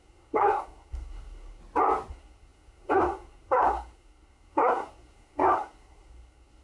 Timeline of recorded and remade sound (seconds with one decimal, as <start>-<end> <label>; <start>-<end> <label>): 0.0-1.6 remade; 1.6-2.1 recorded; 2.1-6.6 remade